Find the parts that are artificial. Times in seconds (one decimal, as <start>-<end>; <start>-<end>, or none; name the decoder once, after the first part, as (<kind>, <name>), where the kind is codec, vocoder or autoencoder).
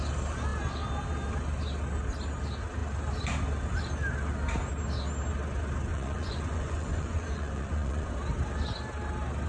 5.9-8.1 (vocoder, Vocos)